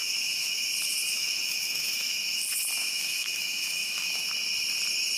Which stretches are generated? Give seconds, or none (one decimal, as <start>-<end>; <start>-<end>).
0.0-0.7; 1.1-2.4; 2.8-4.3